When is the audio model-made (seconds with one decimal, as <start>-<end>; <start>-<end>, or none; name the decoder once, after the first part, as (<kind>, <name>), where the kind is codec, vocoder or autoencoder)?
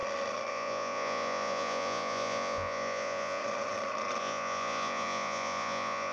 0.5-3.4 (vocoder, Vocos); 4.2-6.1